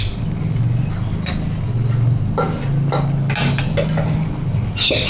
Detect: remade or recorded recorded